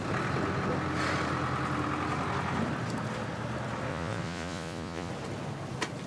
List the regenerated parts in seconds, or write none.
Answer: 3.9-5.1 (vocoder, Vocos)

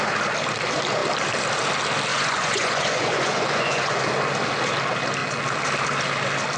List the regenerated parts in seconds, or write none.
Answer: 2.1-4.0 (vocoder, Vocos)